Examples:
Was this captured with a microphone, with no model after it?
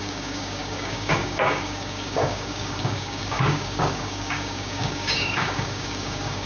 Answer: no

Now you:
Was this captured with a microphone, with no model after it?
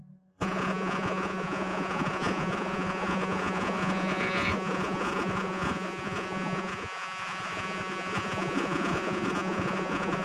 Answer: no